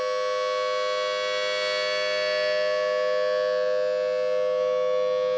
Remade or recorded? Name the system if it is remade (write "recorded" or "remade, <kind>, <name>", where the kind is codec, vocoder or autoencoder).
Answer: recorded